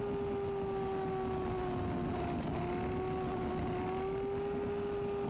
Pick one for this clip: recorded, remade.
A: recorded